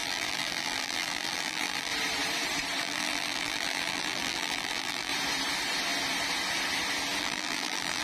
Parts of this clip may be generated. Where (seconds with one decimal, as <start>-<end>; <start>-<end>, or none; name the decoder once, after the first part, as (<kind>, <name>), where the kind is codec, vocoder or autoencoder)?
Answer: 0.0-1.9 (vocoder, BigVGAN v2); 2.8-5.1; 7.2-8.0